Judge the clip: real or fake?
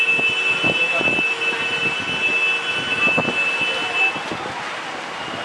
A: real